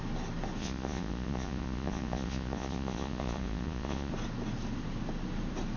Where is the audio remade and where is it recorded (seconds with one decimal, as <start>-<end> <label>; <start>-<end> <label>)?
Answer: 0.0-0.6 recorded; 0.6-4.1 remade; 4.1-5.8 recorded